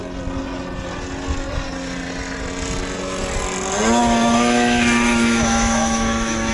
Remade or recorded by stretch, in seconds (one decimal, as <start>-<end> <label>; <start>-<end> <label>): 0.0-4.0 recorded; 4.0-6.5 remade